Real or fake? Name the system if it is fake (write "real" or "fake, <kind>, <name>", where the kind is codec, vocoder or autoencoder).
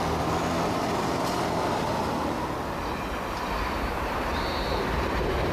real